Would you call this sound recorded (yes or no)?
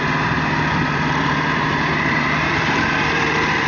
no